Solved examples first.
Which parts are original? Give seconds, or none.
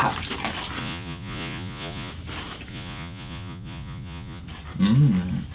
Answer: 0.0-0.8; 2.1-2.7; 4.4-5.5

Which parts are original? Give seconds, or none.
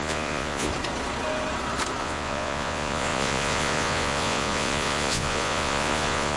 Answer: 0.7-2.0